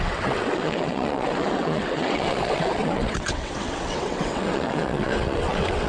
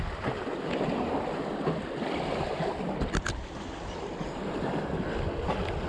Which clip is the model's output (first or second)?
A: first